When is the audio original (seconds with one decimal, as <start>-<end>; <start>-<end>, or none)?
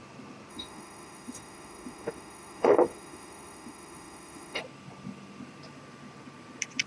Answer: 0.0-0.5; 4.6-6.9